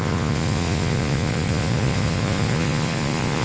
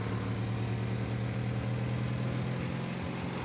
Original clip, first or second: second